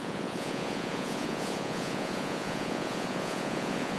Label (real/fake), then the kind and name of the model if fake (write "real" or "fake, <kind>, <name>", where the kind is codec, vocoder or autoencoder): fake, vocoder, Vocos